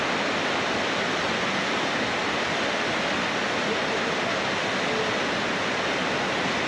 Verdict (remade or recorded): recorded